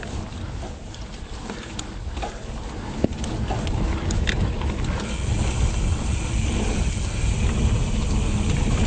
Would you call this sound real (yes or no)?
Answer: yes